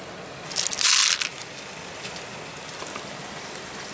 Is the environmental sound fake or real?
real